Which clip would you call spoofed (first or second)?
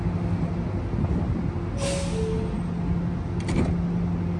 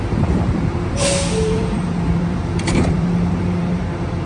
second